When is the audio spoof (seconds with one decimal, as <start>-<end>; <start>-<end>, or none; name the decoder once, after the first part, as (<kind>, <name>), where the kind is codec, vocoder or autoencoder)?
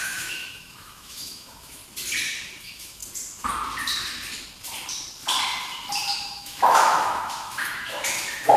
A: 0.0-1.8 (autoencoder, DAC-VAE); 2.6-3.0; 6.2-8.6